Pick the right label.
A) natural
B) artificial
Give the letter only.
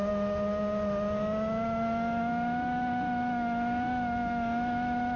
B